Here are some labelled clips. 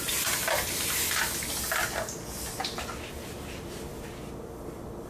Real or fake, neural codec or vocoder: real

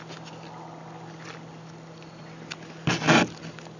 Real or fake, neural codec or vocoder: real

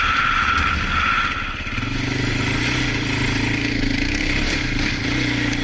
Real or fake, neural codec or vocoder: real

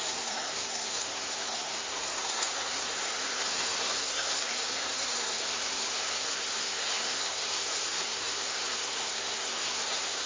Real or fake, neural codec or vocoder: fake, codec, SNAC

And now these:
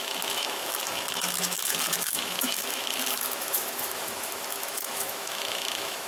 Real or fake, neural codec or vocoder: fake, autoencoder, DAC-VAE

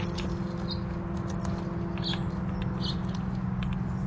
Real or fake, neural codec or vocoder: real